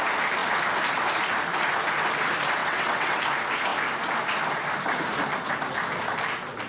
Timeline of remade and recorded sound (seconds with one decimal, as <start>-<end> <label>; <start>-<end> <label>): 0.0-2.6 recorded; 2.6-3.2 remade; 3.2-6.7 recorded